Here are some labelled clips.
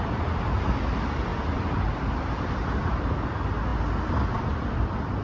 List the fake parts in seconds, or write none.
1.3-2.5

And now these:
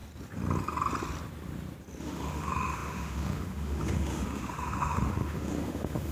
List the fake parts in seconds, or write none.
2.0-6.1

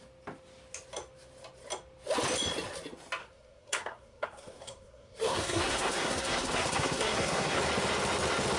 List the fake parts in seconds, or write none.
3.2-7.6

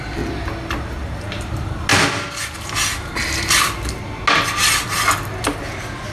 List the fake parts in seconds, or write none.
none

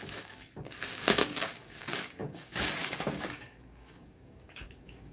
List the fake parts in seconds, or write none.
0.0-5.1